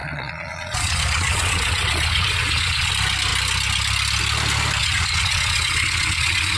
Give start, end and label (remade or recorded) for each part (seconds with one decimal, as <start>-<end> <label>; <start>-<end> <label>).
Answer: 0.0-2.9 remade; 2.9-4.8 recorded; 4.8-6.6 remade